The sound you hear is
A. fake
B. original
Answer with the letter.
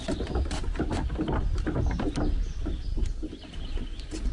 B